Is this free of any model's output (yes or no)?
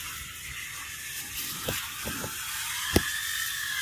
yes